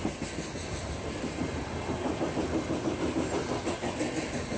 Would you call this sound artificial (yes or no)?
no